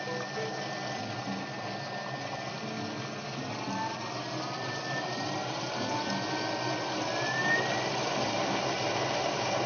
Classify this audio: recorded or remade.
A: recorded